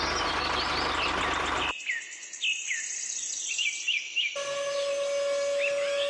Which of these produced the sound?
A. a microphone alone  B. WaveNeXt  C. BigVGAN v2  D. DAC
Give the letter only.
A